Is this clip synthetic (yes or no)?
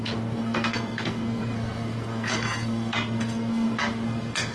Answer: yes